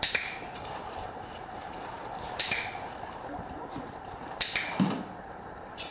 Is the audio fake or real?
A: fake